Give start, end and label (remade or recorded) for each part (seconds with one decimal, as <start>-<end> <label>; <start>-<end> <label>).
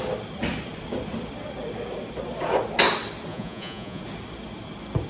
0.0-3.3 recorded; 3.3-4.0 remade; 4.0-5.1 recorded